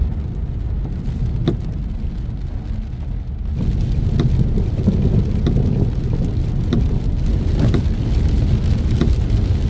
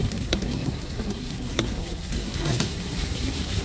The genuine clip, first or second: first